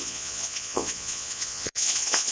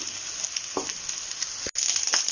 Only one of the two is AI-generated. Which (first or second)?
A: first